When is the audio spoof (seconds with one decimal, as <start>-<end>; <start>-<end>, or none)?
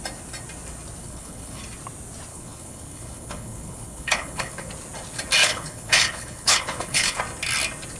1.0-1.6; 2.3-4.7; 5.4-7.2